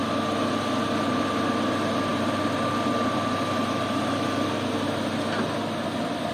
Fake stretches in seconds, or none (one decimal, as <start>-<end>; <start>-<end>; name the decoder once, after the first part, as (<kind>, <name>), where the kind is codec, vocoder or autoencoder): none

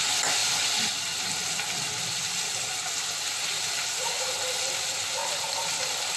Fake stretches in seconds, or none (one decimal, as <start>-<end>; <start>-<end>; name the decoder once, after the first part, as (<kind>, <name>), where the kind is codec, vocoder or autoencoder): none

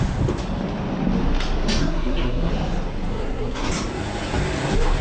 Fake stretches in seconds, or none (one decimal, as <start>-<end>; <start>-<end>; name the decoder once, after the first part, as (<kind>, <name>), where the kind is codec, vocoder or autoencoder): 1.8-2.5 (codec, SNAC); 3.1-3.7